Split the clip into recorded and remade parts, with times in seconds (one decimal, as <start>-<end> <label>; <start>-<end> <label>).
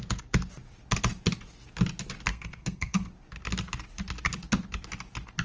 0.0-2.3 recorded; 2.3-3.1 remade; 3.1-5.4 recorded